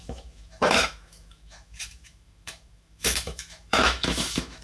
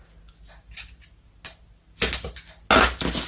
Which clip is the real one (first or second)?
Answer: second